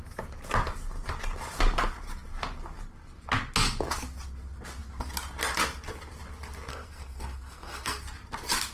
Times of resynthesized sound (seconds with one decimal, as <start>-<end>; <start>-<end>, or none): 6.7-8.0